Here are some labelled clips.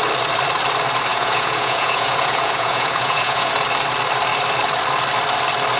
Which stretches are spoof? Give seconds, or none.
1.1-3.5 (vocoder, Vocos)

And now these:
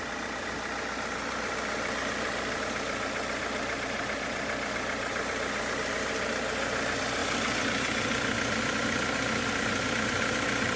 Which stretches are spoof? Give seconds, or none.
none

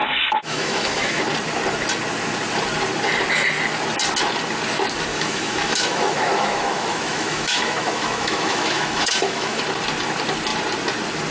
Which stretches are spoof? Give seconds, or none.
0.0-1.2 (autoencoder, DAC-VAE); 5.1-9.6

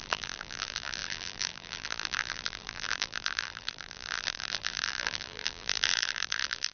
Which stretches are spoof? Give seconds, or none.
0.0-6.7 (vocoder, BigVGAN v2)

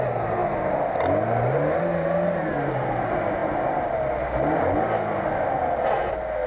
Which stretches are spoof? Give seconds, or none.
none

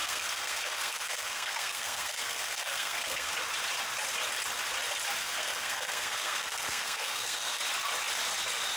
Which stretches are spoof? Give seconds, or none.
0.0-3.3 (codec, SNAC); 5.2-7.6

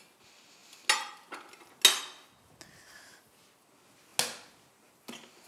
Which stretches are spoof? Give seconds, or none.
none